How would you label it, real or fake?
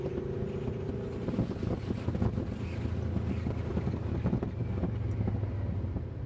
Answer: real